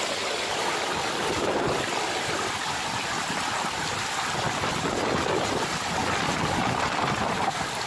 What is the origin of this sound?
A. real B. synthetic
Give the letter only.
A